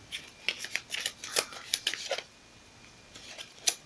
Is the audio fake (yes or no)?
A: no